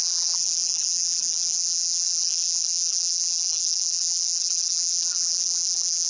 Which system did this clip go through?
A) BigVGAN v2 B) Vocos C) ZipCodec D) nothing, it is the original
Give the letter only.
A